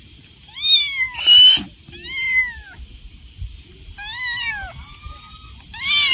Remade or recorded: recorded